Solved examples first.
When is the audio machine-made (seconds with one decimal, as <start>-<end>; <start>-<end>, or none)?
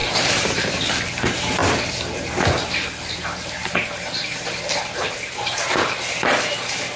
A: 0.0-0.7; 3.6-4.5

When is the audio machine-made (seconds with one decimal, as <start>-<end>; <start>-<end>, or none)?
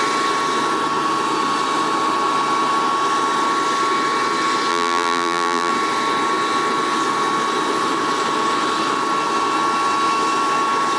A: 4.7-5.7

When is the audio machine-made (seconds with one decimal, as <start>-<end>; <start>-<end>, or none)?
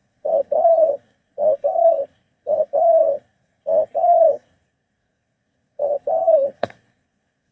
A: 0.0-7.5